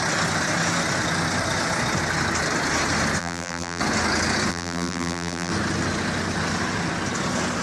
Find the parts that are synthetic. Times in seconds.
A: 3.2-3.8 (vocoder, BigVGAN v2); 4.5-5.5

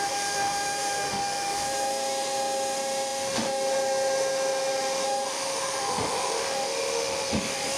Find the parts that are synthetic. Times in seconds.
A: 0.0-7.8 (autoencoder, DAC-VAE)